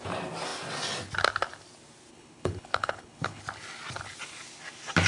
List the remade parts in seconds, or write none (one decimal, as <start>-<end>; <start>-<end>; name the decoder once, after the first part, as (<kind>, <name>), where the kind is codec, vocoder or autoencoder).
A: 2.1-3.4 (codec, HILCodec)